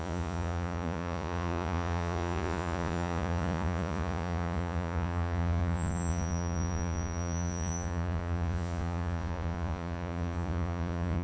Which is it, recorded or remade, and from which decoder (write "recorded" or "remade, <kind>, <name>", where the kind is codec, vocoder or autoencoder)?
remade, vocoder, Vocos